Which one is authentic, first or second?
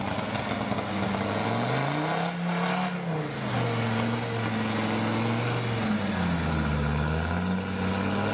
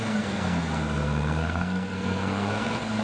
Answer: first